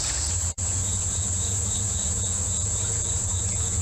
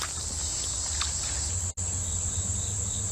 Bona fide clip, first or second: second